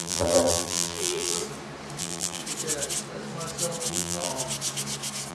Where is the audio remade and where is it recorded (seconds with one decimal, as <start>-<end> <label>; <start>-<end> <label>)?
0.0-1.4 remade; 1.4-2.0 recorded; 2.0-2.4 remade; 2.4-3.9 recorded; 3.9-4.3 remade; 4.3-5.3 recorded